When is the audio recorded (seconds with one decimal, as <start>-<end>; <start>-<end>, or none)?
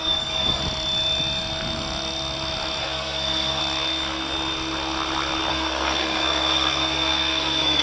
0.6-2.8; 3.6-5.5